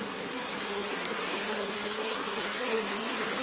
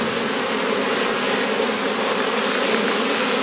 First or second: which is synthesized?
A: first